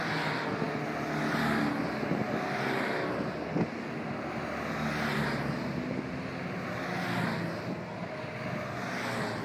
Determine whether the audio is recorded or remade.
recorded